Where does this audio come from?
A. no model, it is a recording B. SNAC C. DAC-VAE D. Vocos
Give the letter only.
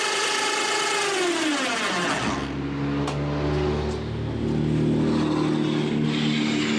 A